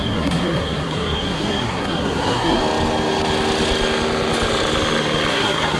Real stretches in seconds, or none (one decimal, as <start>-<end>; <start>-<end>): 2.6-5.3